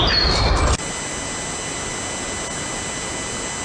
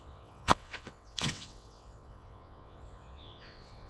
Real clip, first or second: first